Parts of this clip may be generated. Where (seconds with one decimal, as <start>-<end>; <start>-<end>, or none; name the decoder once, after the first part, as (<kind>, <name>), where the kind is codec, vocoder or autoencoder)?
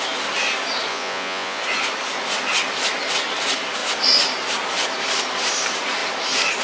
0.9-1.6 (vocoder, Vocos)